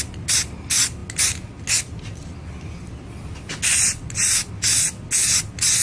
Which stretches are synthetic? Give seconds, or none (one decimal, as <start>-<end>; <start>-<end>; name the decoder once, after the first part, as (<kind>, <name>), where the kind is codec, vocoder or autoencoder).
none